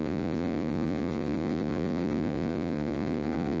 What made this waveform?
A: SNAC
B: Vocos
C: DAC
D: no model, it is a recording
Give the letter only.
B